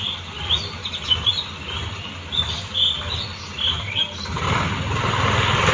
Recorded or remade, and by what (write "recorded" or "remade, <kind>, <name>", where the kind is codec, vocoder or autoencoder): recorded